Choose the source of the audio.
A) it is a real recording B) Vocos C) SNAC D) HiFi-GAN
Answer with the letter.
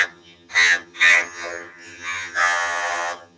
D